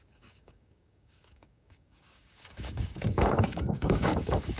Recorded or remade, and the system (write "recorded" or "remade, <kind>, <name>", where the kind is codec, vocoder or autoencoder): remade, codec, DAC